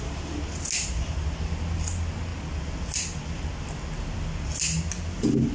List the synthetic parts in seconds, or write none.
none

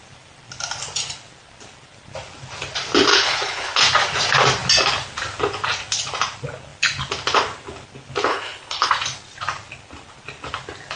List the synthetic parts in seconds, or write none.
3.1-3.8 (codec, HILCodec); 8.3-8.9

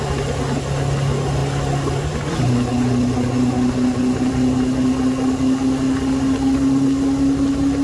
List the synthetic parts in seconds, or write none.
none